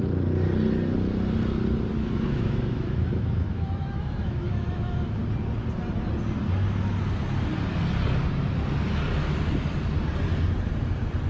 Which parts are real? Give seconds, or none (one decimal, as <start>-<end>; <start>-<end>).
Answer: 0.0-1.9; 5.2-11.3